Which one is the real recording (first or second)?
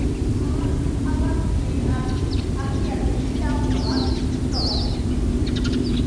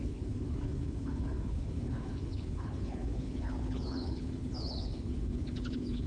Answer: first